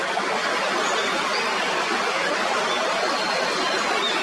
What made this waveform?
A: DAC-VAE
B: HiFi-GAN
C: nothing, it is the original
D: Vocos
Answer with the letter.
C